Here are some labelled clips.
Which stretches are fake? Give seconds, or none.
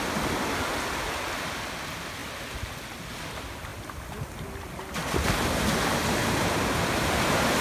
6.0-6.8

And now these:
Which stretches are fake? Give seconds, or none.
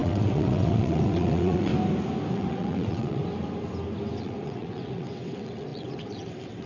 0.0-1.7; 2.3-3.2; 4.2-6.7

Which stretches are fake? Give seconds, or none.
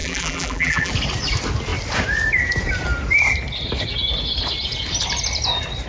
0.0-0.9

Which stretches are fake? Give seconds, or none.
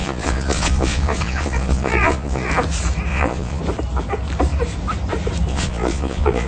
0.0-2.5; 3.1-3.6; 5.5-6.5